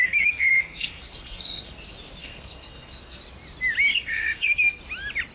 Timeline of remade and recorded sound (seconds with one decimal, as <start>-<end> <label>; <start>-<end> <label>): 0.0-1.8 remade; 1.8-2.2 recorded; 2.2-3.2 remade; 3.2-3.9 recorded; 3.9-4.8 remade; 4.8-5.3 recorded